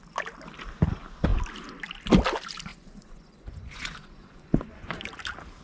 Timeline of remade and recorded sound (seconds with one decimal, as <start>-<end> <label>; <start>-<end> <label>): 0.0-2.7 recorded; 2.7-5.0 remade; 5.0-5.6 recorded